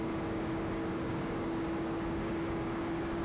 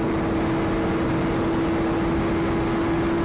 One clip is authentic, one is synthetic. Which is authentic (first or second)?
second